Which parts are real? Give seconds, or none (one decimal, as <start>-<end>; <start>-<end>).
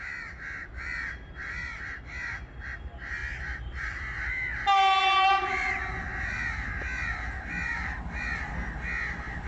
0.0-3.2; 5.7-9.5